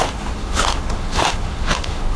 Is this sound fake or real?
fake